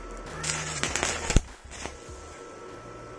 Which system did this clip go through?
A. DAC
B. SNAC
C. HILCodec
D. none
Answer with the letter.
D